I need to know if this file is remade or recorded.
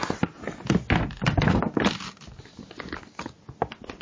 recorded